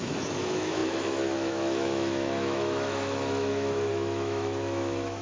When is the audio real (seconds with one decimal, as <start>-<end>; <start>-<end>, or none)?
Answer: none